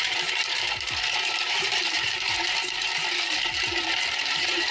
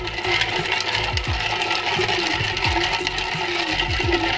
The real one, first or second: second